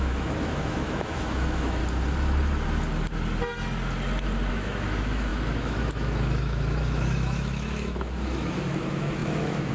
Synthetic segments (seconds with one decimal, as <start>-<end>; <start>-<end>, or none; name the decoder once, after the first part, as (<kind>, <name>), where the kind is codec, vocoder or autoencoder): 0.0-1.8 (autoencoder, DAC-VAE); 4.5-9.7